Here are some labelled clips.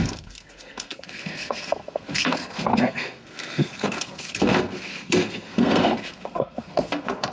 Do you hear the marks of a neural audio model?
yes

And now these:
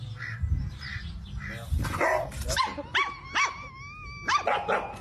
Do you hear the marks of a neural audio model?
no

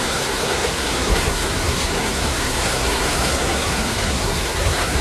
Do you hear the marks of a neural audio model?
yes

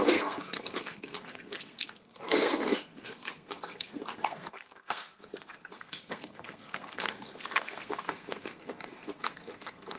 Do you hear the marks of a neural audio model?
yes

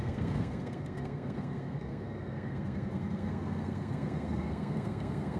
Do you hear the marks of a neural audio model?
yes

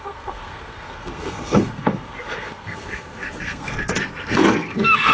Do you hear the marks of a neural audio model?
yes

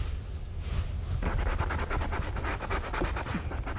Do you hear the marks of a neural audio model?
no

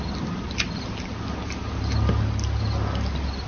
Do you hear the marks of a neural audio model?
no